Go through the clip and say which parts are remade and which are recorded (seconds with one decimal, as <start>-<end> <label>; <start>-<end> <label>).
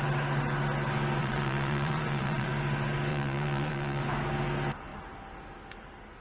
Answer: 0.0-1.2 recorded; 1.2-2.5 remade; 2.5-3.1 recorded; 3.1-4.0 remade; 4.0-6.2 recorded